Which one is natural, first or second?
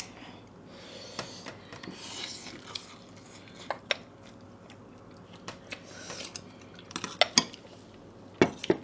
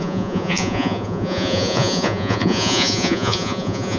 first